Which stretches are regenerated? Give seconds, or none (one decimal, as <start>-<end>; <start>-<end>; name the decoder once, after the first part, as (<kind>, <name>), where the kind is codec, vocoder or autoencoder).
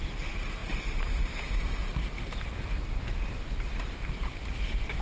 0.0-5.0 (vocoder, BigVGAN v2)